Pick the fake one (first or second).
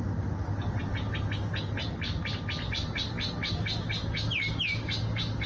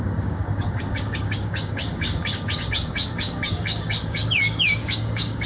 second